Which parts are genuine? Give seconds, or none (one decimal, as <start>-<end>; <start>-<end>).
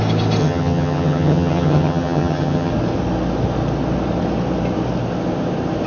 0.0-0.4; 2.7-5.9